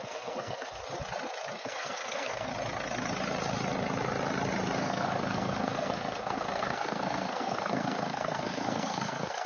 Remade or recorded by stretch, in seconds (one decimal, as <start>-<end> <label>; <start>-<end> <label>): 0.0-0.8 remade; 0.8-1.6 recorded; 1.6-2.5 remade; 2.5-4.8 recorded; 4.8-9.5 remade